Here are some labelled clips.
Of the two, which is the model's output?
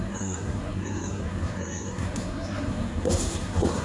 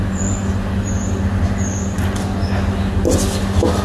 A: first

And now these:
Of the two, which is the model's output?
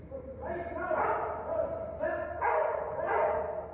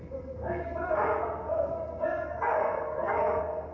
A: second